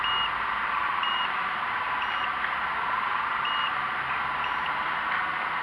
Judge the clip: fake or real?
real